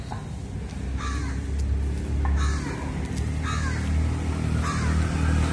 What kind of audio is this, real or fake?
real